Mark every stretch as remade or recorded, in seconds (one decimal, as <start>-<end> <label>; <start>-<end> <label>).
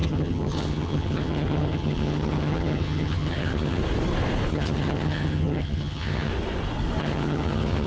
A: 0.0-3.8 remade; 3.8-4.5 recorded; 4.5-6.3 remade; 6.3-7.0 recorded; 7.0-7.9 remade